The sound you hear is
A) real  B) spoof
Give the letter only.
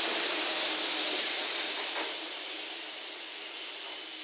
A